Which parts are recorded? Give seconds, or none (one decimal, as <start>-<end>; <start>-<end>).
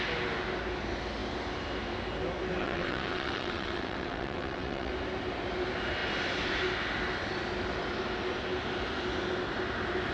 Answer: 0.0-2.6; 4.9-10.1